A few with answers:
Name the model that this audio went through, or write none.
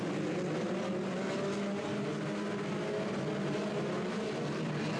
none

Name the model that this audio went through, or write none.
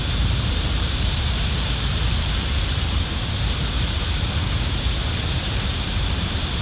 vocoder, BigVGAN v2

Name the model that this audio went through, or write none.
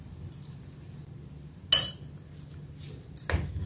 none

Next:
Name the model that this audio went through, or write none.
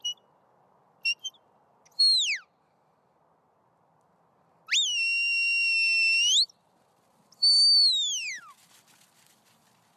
none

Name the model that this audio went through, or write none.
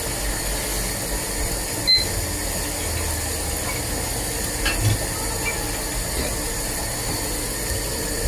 none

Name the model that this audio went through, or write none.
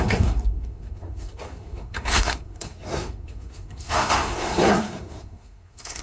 codec, SNAC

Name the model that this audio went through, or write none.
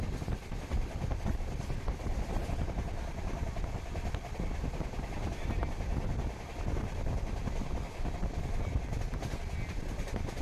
none